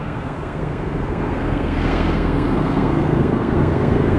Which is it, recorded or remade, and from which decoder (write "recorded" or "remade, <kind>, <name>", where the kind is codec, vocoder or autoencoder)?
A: remade, codec, SNAC